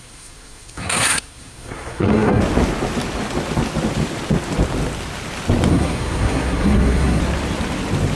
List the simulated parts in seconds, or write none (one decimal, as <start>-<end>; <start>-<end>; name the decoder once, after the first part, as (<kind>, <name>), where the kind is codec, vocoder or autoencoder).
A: 0.0-2.4 (codec, SNAC); 5.7-7.2